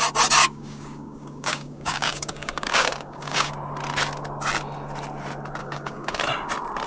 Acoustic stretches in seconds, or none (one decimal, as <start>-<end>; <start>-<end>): 0.0-0.4; 3.5-5.6; 6.2-6.9